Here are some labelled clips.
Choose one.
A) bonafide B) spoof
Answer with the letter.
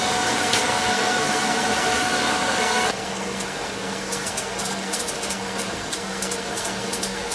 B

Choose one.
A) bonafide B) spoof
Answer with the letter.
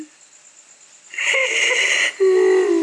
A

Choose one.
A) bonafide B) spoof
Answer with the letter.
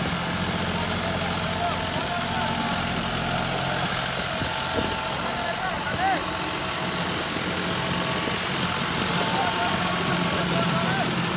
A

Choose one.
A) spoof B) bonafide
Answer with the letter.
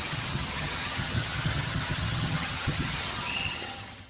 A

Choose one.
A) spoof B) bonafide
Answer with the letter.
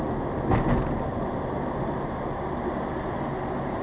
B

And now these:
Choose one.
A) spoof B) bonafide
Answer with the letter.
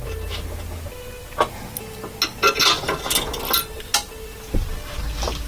B